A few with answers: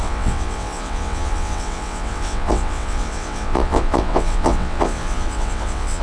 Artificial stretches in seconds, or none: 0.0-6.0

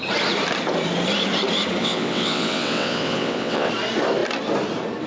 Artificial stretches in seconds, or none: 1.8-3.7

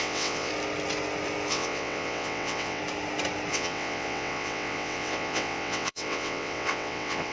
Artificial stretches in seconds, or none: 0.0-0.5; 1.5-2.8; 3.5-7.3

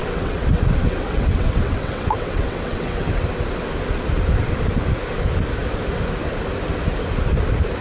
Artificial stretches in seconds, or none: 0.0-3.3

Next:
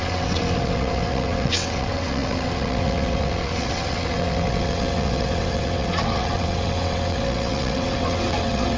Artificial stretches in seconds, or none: 0.0-8.8

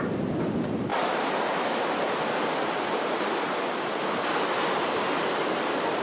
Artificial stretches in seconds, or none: none

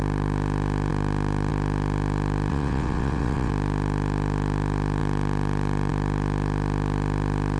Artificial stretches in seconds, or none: 2.5-3.5

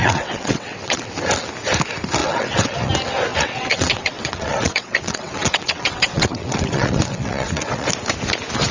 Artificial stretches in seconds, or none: 0.0-1.1; 2.2-2.9; 3.3-7.9